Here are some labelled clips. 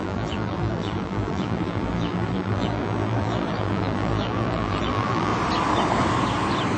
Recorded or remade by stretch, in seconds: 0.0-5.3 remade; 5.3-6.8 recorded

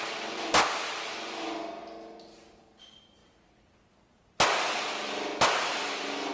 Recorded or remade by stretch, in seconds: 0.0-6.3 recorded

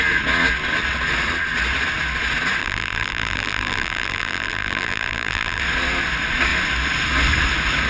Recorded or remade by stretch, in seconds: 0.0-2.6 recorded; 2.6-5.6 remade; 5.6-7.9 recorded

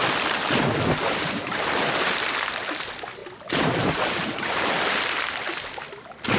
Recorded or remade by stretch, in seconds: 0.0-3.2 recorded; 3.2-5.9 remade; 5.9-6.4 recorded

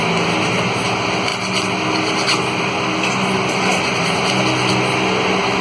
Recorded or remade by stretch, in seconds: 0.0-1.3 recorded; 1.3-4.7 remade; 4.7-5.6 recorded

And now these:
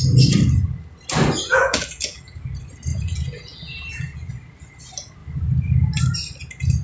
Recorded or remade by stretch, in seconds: 0.0-1.5 recorded; 1.5-2.5 remade; 2.5-2.9 recorded; 2.9-4.3 remade; 4.3-6.8 recorded

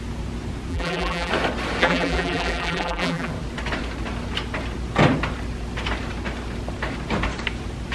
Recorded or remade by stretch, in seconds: 0.0-0.7 recorded; 0.7-1.3 remade; 1.3-1.8 recorded; 1.8-3.3 remade; 3.3-7.9 recorded